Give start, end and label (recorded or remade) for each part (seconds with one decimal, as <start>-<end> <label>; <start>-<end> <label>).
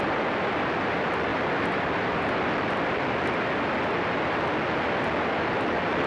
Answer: 0.0-6.1 recorded